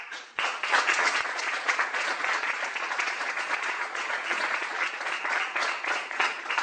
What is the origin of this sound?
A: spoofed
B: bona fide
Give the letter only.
A